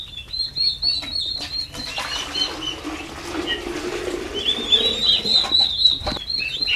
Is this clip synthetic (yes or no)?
no